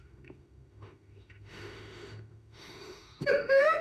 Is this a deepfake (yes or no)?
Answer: yes